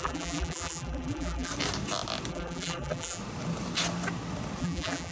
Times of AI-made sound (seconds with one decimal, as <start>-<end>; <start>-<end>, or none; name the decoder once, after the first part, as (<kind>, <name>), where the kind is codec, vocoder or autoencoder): 0.0-1.5 (vocoder, BigVGAN v2); 2.3-3.2; 4.6-5.1